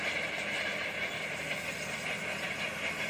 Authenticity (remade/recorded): recorded